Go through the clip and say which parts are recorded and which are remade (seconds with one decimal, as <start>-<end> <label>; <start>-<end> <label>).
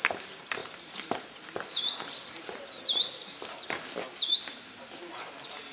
0.0-0.6 recorded; 0.6-2.6 remade; 2.6-5.7 recorded